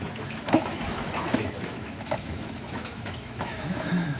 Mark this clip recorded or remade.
remade